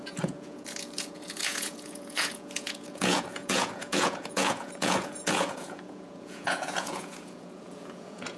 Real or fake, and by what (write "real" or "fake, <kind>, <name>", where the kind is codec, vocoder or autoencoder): fake, vocoder, Vocos